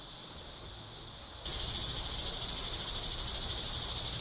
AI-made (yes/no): no